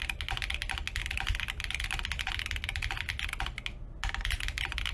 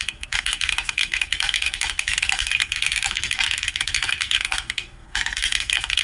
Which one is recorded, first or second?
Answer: first